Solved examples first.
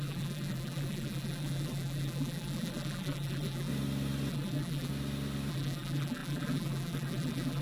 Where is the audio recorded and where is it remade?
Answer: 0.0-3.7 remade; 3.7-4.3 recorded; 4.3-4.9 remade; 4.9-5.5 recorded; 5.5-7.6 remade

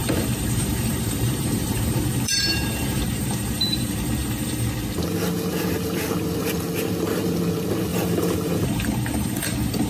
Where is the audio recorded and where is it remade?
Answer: 0.0-4.7 remade; 4.7-7.9 recorded; 7.9-9.9 remade